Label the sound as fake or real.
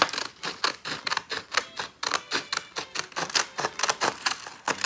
real